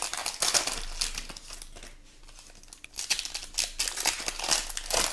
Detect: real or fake real